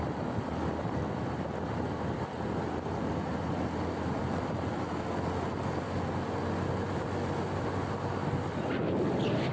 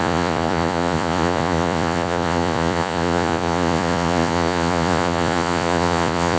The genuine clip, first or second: first